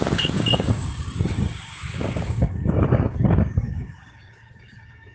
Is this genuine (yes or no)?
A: no